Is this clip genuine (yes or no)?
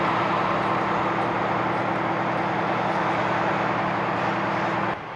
yes